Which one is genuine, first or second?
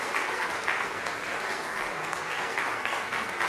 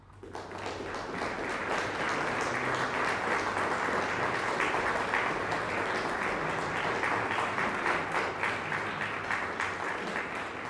second